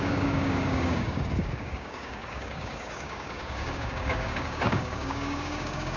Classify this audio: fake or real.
fake